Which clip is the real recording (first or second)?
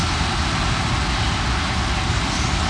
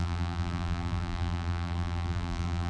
first